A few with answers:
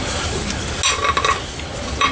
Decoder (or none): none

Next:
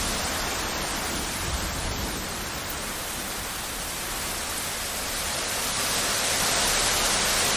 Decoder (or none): none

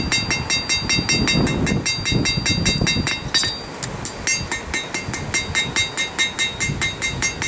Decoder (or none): none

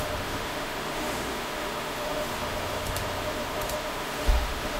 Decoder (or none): autoencoder, DAC-VAE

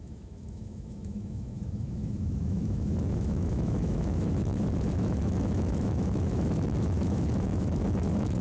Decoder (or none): autoencoder, DAC-VAE